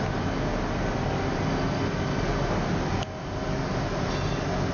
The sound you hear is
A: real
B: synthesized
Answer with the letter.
A